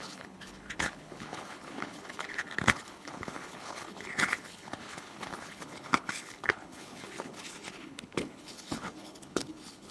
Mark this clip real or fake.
fake